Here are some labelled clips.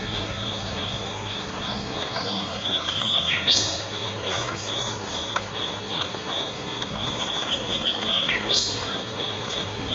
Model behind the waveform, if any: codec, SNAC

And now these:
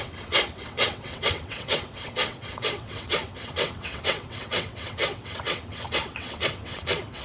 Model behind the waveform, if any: vocoder, WaveNeXt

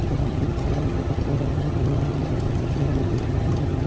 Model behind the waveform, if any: vocoder, HiFi-GAN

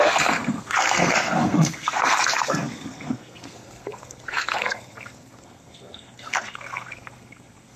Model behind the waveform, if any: codec, SNAC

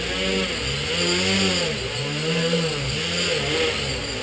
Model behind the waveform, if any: none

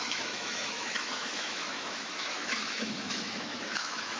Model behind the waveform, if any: autoencoder, DAC-VAE